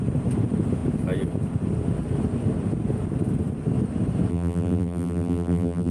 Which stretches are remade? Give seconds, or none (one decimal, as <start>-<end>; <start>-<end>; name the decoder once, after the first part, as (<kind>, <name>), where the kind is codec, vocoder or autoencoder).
4.3-5.9 (vocoder, BigVGAN v2)